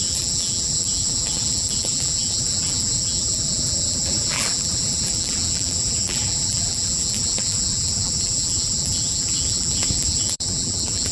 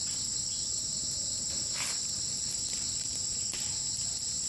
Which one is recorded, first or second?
second